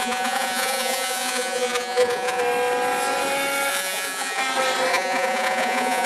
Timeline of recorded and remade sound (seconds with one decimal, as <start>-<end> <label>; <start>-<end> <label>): 0.0-2.4 remade; 2.4-3.7 recorded; 3.7-4.4 remade; 4.4-4.9 recorded; 4.9-6.1 remade